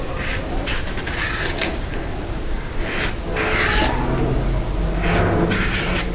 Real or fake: real